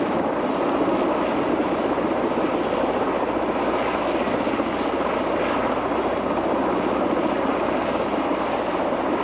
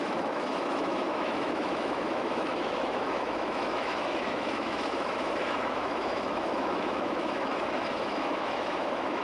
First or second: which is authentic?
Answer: first